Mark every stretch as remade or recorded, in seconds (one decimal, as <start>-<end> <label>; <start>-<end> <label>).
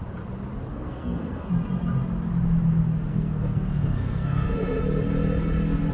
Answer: 0.0-0.7 recorded; 0.7-1.5 remade; 1.5-3.1 recorded; 3.1-4.8 remade; 4.8-5.9 recorded